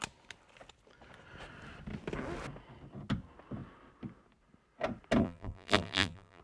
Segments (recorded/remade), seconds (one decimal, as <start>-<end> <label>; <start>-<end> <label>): 0.0-5.2 recorded; 5.2-6.4 remade